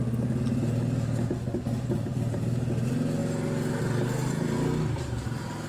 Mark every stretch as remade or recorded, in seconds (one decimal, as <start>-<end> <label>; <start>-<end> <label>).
0.0-5.7 recorded